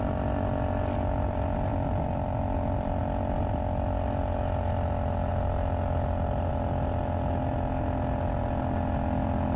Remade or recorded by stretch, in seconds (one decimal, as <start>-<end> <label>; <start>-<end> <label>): 0.0-1.7 recorded; 1.7-3.0 remade; 3.0-9.6 recorded